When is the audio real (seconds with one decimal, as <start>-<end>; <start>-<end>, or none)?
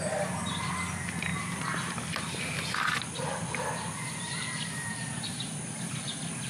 0.0-6.5